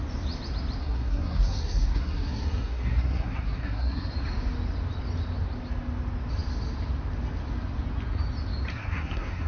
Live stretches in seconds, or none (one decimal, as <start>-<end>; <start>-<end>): 0.0-0.8; 4.1-8.7